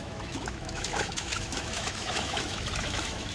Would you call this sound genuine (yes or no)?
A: no